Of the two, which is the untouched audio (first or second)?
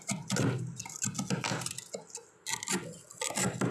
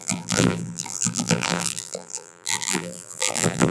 first